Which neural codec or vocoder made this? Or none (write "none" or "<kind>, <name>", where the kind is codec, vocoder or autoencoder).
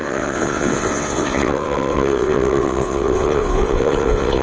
vocoder, WaveNeXt